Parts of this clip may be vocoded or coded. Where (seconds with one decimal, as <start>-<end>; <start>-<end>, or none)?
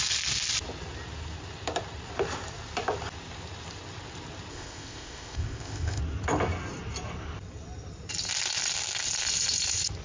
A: 4.5-6.0